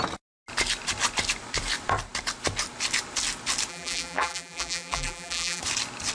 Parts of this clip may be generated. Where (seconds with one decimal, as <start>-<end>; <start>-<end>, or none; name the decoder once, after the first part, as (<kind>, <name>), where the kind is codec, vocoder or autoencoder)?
3.7-5.6 (vocoder, BigVGAN v2)